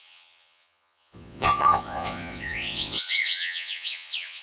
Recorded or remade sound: remade